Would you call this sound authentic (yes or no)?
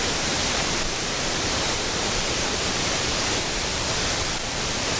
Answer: no